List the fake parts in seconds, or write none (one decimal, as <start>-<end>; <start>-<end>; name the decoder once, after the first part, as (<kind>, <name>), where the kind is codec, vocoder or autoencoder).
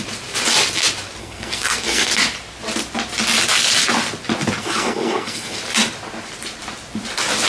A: 1.2-2.1 (codec, SNAC); 4.6-5.6